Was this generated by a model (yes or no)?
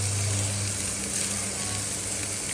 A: no